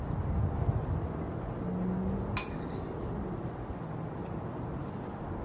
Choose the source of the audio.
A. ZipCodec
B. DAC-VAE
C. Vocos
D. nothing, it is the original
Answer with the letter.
D